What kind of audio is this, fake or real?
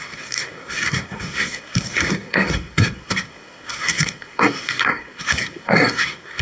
fake